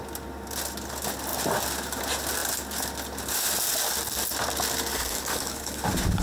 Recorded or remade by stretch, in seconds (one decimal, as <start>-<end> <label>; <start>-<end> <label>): 0.0-4.9 recorded; 4.9-5.8 remade; 5.8-6.2 recorded